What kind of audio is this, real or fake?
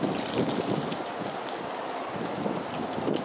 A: real